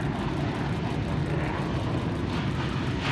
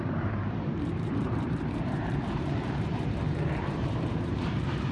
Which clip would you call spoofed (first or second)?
second